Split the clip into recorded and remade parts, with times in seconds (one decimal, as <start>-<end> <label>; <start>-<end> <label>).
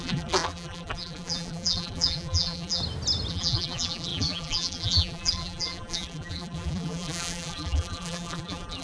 0.0-2.8 remade; 2.8-3.3 recorded; 3.3-8.8 remade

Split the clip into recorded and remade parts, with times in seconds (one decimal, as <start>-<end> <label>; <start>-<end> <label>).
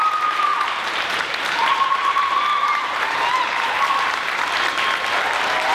0.0-0.5 recorded; 0.5-3.7 remade; 3.7-5.7 recorded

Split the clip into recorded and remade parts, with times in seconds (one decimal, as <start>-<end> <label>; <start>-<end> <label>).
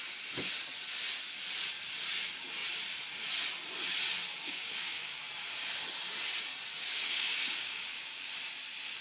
0.0-4.3 recorded; 4.3-5.2 remade; 5.2-6.7 recorded; 6.7-8.3 remade; 8.3-9.0 recorded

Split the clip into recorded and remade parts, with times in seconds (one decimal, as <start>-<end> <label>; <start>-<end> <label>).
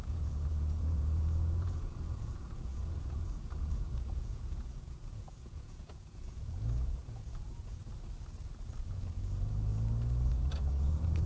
0.0-7.8 remade; 7.8-8.8 recorded; 8.8-9.7 remade; 9.7-10.3 recorded; 10.3-11.3 remade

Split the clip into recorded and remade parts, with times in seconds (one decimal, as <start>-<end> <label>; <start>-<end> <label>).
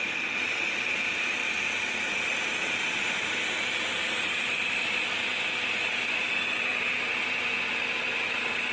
0.0-3.9 recorded; 3.9-4.5 remade; 4.5-6.7 recorded; 6.7-7.4 remade; 7.4-8.7 recorded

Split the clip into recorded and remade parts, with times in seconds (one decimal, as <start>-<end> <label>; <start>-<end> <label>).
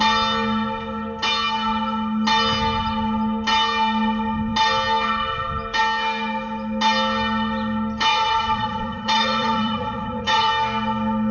0.0-8.1 recorded; 8.1-10.5 remade; 10.5-11.3 recorded